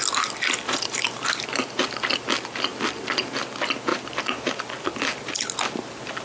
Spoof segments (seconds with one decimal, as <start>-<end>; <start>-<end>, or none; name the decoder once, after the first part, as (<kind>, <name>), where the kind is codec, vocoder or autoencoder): 3.9-5.0 (vocoder, BigVGAN v2)